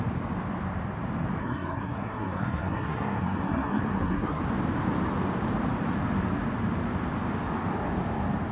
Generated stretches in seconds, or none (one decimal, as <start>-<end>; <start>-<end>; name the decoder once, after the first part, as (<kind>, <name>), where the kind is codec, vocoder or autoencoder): 1.4-4.4 (codec, SNAC)